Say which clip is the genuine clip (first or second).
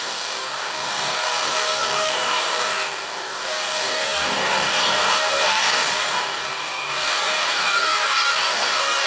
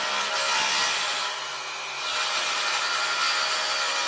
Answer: second